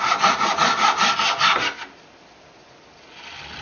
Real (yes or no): yes